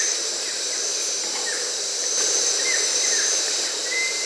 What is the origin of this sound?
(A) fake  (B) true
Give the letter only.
A